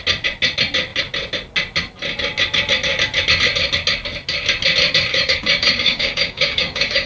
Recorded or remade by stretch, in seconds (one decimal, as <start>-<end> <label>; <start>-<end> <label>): 0.0-5.1 recorded; 5.1-7.1 remade